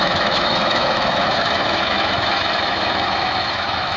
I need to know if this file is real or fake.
fake